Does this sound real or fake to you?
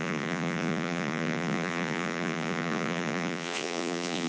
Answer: fake